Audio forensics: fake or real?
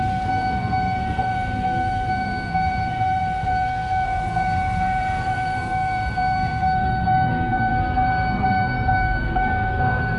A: fake